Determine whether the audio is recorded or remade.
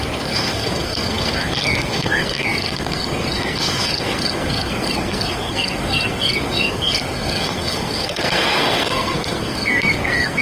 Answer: remade